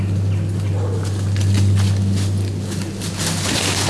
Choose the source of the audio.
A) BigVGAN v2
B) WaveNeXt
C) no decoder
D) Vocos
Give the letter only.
C